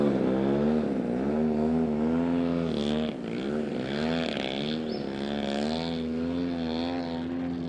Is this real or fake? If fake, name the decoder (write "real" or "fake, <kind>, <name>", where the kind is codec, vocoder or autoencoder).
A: real